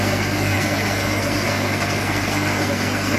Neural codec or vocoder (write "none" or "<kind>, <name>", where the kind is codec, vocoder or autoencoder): codec, SNAC